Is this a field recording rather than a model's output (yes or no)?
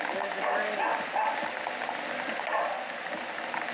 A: yes